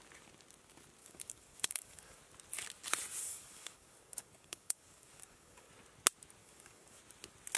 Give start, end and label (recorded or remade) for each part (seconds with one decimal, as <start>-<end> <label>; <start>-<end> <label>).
0.0-1.0 recorded; 1.0-2.2 remade; 2.2-3.2 recorded; 3.2-5.7 remade; 5.7-6.4 recorded; 6.4-7.0 remade; 7.0-7.6 recorded